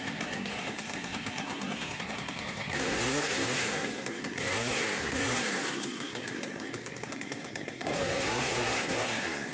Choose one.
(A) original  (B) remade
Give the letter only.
B